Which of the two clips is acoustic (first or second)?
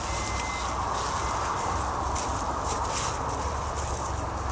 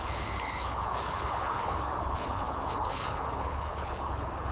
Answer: first